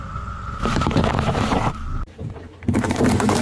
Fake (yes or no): yes